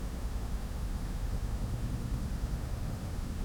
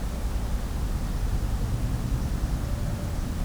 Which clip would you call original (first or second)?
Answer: second